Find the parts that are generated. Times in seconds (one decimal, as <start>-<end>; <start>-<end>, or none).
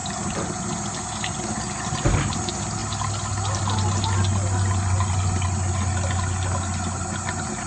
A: none